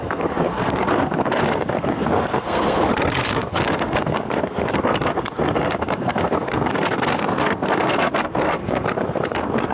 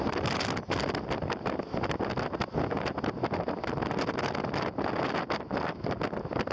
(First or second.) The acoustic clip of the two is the second